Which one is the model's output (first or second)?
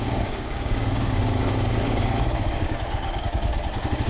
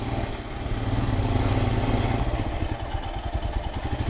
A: first